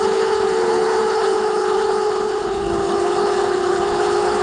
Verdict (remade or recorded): remade